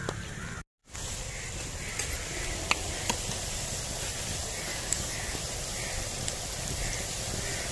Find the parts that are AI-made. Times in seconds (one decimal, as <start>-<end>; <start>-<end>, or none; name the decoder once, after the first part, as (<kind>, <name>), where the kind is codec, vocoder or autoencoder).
4.7-5.4 (codec, DAC)